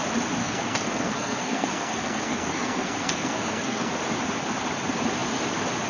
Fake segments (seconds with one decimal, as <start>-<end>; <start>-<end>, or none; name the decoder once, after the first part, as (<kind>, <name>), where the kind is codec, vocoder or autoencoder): 0.4-3.9 (codec, SNAC)